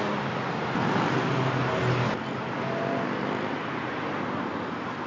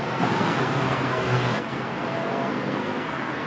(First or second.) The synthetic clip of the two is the second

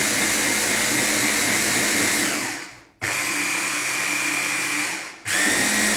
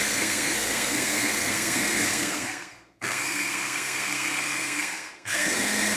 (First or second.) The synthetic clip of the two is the second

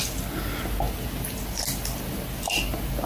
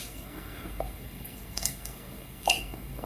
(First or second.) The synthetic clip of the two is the second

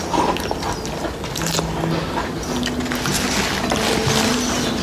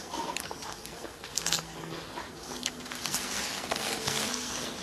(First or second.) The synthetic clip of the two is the second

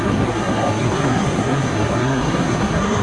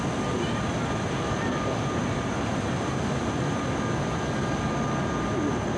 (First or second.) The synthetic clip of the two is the first